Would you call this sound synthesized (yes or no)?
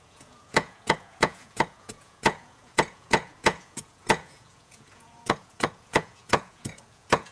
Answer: yes